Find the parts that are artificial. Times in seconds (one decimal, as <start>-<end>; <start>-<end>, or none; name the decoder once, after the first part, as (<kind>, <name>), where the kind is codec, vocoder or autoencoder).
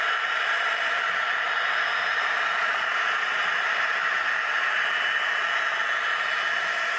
2.6-3.5 (vocoder, Vocos)